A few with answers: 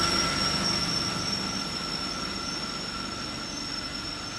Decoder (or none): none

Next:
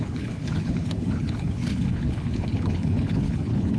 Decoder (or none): codec, HILCodec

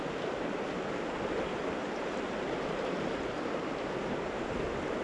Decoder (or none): none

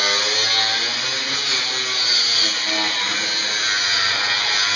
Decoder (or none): none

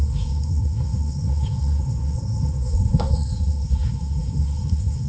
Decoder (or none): codec, SNAC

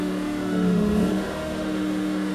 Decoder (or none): autoencoder, DAC-VAE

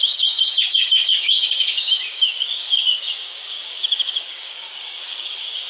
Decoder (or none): codec, DAC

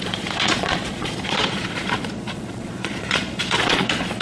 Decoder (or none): vocoder, Vocos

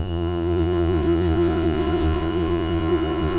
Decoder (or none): vocoder, Vocos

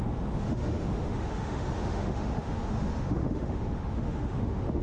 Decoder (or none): autoencoder, DAC-VAE